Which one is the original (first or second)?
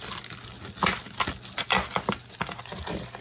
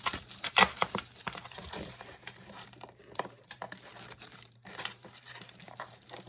first